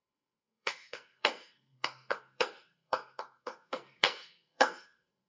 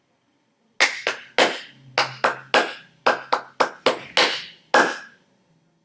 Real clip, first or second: second